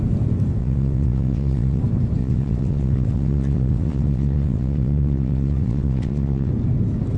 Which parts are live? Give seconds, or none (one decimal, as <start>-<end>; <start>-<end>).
0.0-0.6; 1.8-2.2; 6.5-7.2